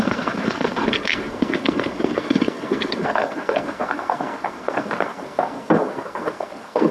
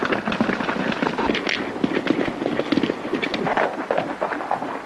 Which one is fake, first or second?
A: first